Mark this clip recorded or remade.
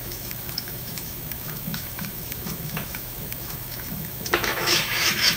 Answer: remade